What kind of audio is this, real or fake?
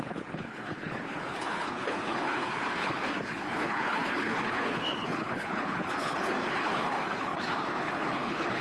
fake